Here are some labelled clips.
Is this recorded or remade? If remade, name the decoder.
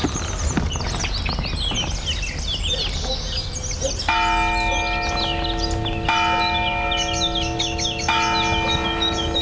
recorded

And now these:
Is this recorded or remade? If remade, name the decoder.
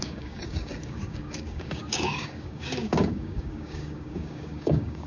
remade, codec, DAC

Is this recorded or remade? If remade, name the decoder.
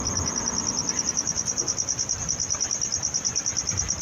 remade, vocoder, BigVGAN v2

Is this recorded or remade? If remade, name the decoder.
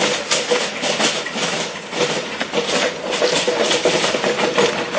remade, vocoder, BigVGAN v2